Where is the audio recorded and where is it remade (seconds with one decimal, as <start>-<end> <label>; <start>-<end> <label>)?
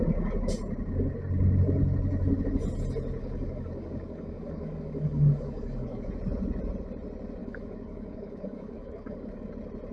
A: 0.0-3.2 recorded; 3.2-6.1 remade; 6.1-7.4 recorded; 7.4-9.5 remade; 9.5-9.9 recorded